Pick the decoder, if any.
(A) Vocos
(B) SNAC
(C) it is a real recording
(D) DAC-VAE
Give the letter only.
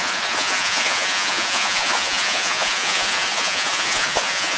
A